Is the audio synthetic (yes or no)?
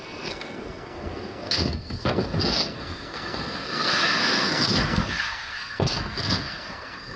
yes